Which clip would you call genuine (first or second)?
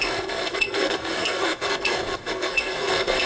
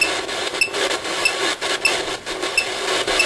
second